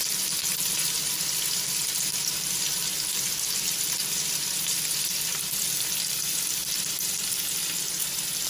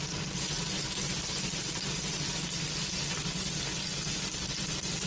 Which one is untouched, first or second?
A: second